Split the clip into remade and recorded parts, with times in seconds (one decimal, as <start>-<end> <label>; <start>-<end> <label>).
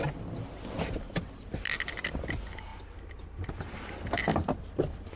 0.0-5.2 recorded